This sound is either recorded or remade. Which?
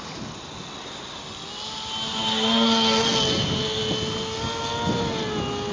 recorded